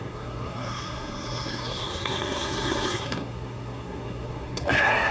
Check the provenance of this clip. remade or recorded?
remade